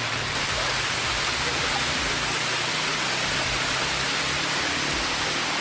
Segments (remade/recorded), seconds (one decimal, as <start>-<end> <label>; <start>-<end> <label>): 0.0-5.6 recorded

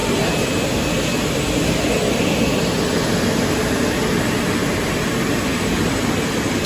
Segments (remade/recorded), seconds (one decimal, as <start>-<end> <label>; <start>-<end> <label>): 0.0-6.7 recorded

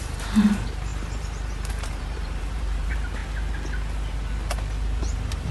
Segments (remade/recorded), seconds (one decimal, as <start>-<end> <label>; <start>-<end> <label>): 0.0-3.2 remade; 3.2-5.0 recorded; 5.0-5.5 remade

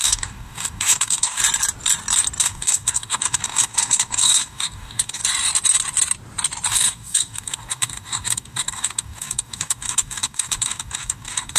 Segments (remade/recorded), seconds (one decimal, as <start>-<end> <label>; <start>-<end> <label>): 0.0-1.4 remade; 1.4-2.4 recorded; 2.4-5.2 remade; 5.2-6.7 recorded; 6.7-11.6 remade

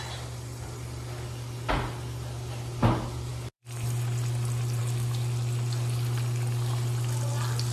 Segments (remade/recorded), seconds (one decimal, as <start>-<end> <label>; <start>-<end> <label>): 0.0-7.7 recorded

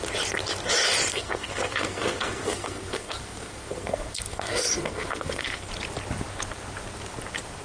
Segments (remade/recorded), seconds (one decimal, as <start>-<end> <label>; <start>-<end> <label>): 0.0-1.1 recorded; 1.1-5.7 remade; 5.7-7.6 recorded